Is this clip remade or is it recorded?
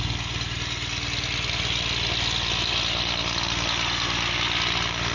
recorded